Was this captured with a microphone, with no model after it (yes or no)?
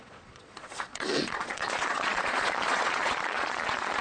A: no